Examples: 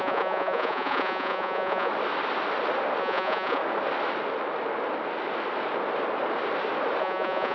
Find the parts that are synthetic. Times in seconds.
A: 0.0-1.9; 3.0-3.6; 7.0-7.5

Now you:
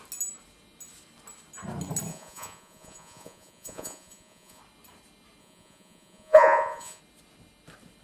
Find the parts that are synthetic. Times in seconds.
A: 2.1-4.6; 5.4-7.0

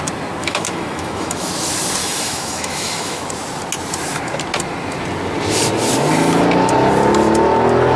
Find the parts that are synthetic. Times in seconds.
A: 0.4-1.5; 2.0-3.3

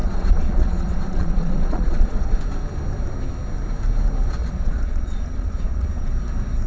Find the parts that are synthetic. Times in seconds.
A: 0.0-2.4; 4.4-6.1

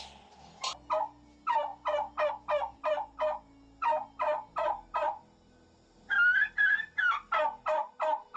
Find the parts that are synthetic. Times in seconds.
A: none

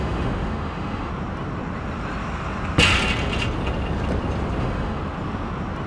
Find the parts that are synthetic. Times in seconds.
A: 0.0-1.1; 4.6-5.0